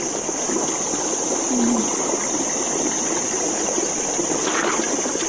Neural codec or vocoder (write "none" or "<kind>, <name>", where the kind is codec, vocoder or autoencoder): none